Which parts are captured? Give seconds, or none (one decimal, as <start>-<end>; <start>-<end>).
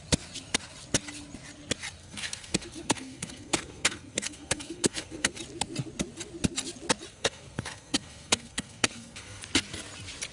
0.0-2.0; 5.4-7.1; 9.4-10.3